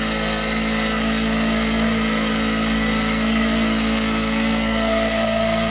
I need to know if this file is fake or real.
fake